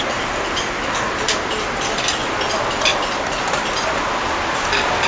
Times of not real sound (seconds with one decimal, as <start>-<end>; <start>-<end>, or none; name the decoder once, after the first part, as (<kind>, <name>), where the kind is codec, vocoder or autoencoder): none